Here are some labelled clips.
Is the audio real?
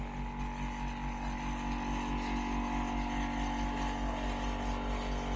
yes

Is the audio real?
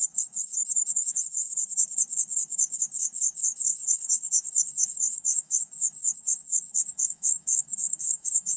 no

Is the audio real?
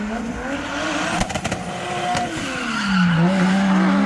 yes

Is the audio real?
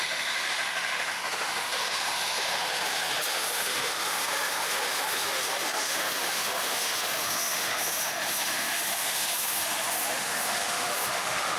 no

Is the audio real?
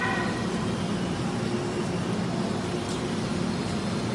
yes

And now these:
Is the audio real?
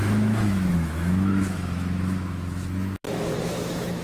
no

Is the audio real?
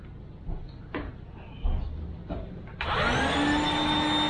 yes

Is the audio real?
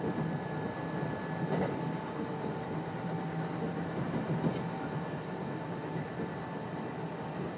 yes